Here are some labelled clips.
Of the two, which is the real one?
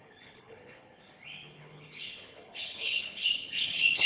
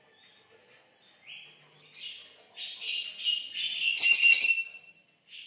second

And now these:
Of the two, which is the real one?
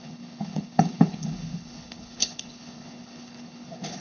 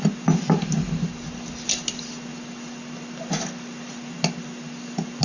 second